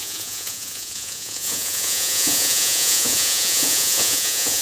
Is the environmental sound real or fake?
fake